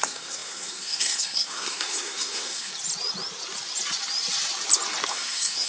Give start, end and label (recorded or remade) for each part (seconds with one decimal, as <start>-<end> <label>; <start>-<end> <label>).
0.0-2.7 remade; 2.7-5.1 recorded; 5.1-5.7 remade